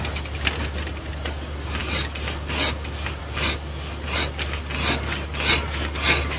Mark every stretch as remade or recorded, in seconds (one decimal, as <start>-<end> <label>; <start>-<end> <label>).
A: 0.0-6.4 recorded